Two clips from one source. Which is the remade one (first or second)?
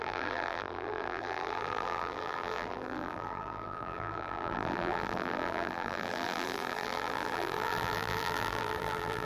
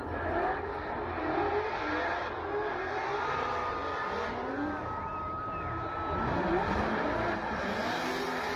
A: first